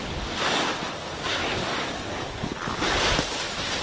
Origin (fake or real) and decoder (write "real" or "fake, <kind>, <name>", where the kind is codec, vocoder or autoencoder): real